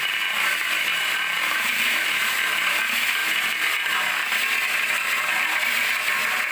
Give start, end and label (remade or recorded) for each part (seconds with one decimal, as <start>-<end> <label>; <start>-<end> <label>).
0.0-0.9 recorded; 0.9-2.8 remade; 2.8-6.5 recorded

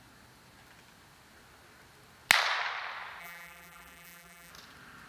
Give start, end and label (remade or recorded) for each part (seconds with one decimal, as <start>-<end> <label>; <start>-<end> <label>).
0.0-3.2 recorded; 3.2-4.5 remade; 4.5-5.1 recorded

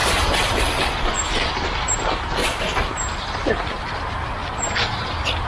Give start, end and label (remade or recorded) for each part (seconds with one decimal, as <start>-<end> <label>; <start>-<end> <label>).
0.0-2.4 recorded; 2.4-3.7 remade; 3.7-5.5 recorded

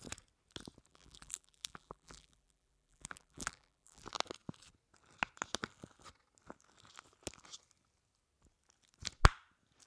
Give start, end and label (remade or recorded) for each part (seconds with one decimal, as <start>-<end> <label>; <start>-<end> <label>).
0.0-0.9 recorded; 0.9-4.0 remade; 4.0-9.9 recorded

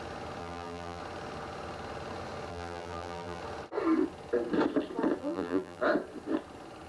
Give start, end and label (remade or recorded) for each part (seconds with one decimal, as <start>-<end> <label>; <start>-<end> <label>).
0.0-0.4 recorded; 0.4-1.0 remade; 1.0-2.5 recorded; 2.5-3.4 remade; 3.4-5.2 recorded; 5.2-5.8 remade; 5.8-6.9 recorded

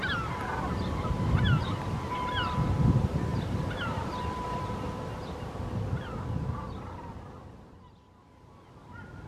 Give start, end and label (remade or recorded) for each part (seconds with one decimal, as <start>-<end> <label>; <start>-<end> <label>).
0.0-3.3 recorded; 3.3-6.2 remade; 6.2-9.3 recorded